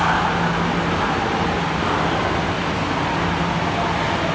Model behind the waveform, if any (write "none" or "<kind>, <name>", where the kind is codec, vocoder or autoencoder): none